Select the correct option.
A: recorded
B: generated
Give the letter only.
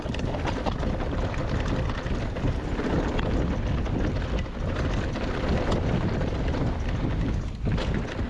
A